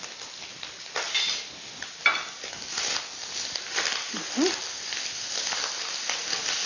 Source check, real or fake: real